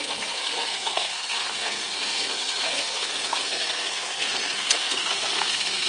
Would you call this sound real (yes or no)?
no